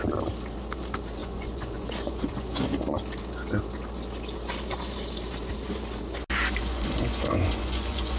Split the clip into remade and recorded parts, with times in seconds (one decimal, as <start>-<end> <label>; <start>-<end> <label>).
0.0-1.2 recorded; 1.2-2.8 remade; 2.8-6.6 recorded; 6.6-8.2 remade